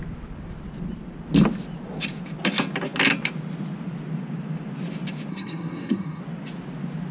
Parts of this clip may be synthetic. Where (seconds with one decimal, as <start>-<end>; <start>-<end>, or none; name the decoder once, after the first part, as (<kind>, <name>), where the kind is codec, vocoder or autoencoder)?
5.3-6.2 (codec, SNAC)